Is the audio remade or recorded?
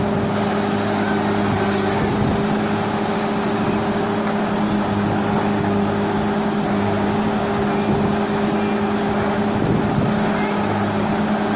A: recorded